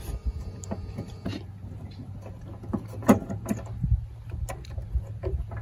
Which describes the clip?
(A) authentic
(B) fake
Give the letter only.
A